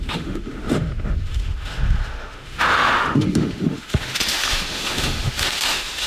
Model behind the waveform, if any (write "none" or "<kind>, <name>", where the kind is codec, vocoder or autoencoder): autoencoder, DAC-VAE